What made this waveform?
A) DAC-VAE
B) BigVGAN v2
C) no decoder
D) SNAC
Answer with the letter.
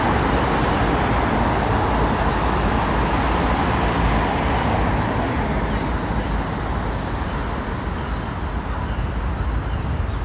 C